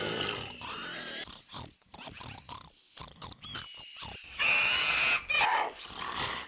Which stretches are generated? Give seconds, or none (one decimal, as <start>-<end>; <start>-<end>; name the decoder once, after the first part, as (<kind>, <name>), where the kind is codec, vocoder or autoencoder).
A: 4.2-4.8 (autoencoder, DAC-VAE)